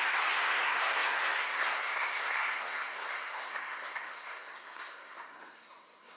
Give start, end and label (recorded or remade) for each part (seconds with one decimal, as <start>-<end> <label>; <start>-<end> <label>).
0.0-6.2 remade